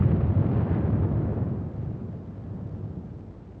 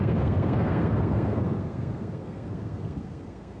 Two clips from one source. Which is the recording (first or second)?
first